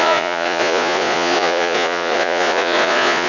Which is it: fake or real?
fake